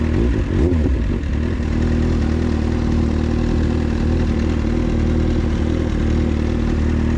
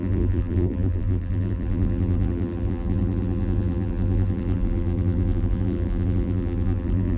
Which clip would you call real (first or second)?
first